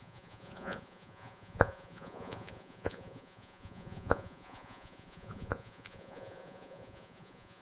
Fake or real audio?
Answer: fake